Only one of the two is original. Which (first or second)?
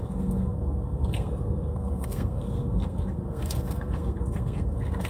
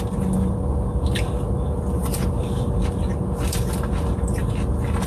second